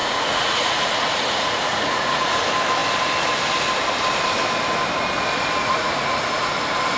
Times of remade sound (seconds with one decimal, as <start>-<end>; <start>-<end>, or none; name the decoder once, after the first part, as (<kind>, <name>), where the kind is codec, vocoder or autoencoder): 0.0-2.3 (vocoder, Vocos); 5.6-6.5